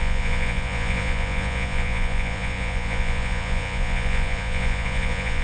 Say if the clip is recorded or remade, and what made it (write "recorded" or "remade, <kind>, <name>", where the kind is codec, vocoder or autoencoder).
remade, vocoder, Vocos